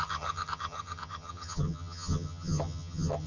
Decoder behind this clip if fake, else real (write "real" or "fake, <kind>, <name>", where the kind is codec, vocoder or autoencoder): fake, vocoder, HiFi-GAN